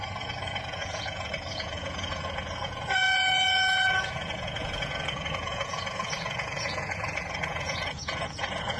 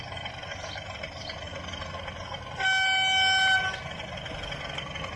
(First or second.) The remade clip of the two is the first